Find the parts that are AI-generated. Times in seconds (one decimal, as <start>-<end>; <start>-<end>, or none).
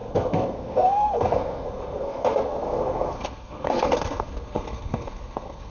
0.0-5.7